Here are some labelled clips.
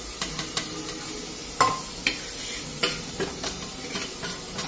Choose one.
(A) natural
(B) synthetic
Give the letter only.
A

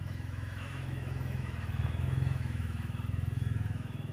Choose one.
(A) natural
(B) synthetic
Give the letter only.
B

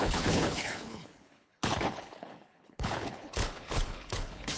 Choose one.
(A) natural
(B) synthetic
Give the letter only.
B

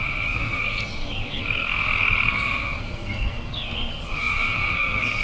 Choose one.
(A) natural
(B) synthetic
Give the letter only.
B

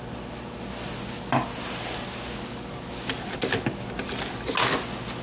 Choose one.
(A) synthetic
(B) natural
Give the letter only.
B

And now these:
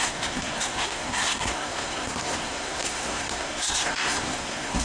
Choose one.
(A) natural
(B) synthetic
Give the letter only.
B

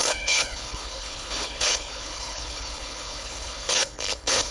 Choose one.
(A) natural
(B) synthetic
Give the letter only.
B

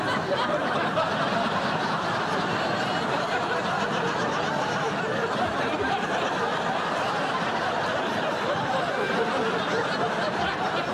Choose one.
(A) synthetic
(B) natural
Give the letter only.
B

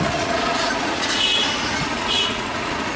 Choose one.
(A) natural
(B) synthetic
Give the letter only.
B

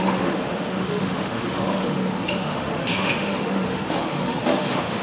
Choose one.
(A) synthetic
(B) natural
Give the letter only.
A